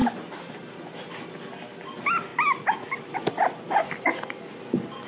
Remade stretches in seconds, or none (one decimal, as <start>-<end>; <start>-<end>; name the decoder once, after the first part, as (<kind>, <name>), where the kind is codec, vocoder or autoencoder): none

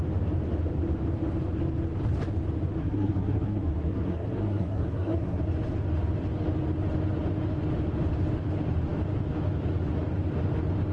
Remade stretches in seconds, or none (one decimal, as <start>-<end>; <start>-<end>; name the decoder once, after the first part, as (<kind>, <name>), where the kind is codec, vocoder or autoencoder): 2.8-5.4 (codec, SNAC)

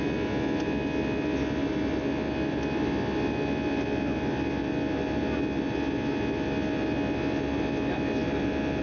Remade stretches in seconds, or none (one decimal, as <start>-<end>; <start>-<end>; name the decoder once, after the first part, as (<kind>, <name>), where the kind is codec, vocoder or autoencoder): none

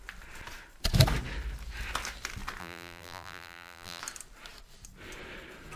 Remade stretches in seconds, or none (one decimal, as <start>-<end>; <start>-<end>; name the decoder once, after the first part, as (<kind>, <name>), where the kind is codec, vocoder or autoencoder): 2.6-4.0 (vocoder, BigVGAN v2)

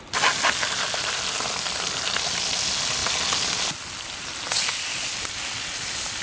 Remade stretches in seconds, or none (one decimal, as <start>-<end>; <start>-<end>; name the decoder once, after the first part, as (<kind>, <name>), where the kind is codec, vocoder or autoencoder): none

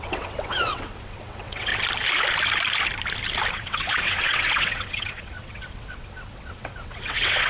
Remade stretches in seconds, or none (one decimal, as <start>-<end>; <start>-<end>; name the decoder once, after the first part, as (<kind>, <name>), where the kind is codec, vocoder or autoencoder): 0.0-1.7 (vocoder, WaveNeXt); 3.5-7.5

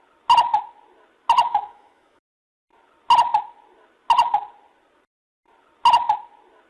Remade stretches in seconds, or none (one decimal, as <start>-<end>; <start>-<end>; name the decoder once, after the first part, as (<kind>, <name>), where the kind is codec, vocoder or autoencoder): 1.5-2.2 (autoencoder, DAC-VAE)